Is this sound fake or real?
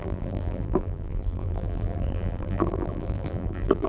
fake